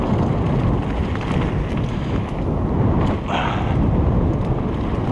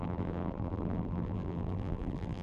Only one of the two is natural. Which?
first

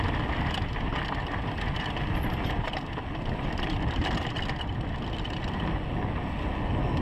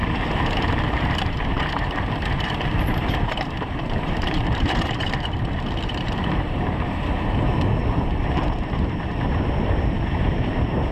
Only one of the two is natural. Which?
first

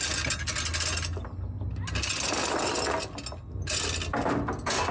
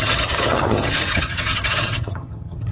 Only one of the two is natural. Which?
first